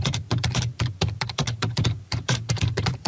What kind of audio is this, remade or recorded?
remade